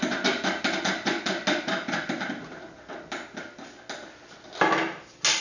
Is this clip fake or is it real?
real